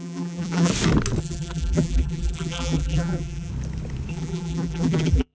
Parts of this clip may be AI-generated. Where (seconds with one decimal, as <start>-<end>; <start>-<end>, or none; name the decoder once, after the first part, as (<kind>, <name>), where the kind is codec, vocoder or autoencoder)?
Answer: 0.0-0.7 (vocoder, BigVGAN v2); 1.2-3.5; 4.1-5.3